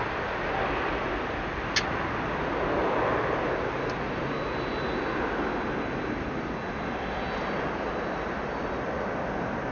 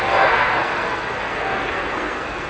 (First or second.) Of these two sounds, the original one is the first